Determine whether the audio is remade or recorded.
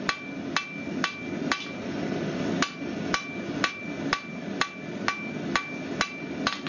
recorded